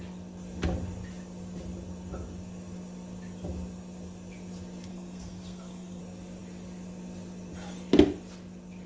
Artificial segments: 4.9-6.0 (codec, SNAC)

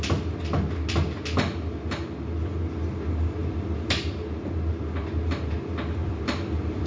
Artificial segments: 3.4-4.1 (vocoder, BigVGAN v2); 6.0-6.9

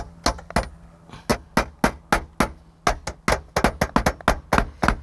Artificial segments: none

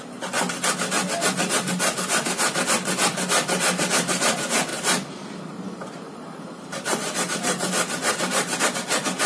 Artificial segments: 4.7-8.6 (vocoder, BigVGAN v2)